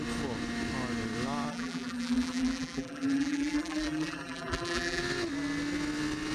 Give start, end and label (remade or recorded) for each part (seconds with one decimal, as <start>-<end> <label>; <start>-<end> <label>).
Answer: 0.0-1.5 recorded; 1.5-5.0 remade; 5.0-6.3 recorded